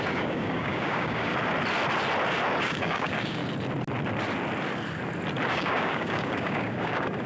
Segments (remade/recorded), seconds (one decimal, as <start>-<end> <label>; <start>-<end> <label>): 0.0-1.3 remade; 1.3-2.6 recorded; 2.6-3.4 remade; 3.4-5.5 recorded; 5.5-7.3 remade